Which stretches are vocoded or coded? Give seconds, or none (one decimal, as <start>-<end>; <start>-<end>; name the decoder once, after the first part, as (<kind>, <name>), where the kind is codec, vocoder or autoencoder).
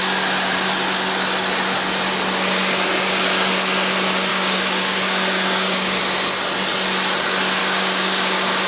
4.3-6.0 (codec, DAC); 7.6-8.7